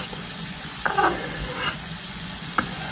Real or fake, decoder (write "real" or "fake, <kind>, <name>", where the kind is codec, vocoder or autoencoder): fake, vocoder, Vocos